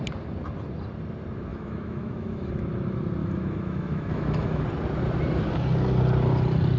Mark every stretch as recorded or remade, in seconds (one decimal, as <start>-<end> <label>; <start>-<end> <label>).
0.0-1.5 recorded; 1.5-2.5 remade; 2.5-3.2 recorded; 3.2-4.6 remade; 4.6-6.8 recorded